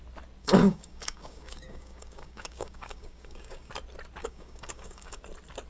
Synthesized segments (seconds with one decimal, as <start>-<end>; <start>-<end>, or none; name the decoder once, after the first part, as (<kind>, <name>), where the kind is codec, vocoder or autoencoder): 0.4-3.7 (codec, DAC); 4.2-5.2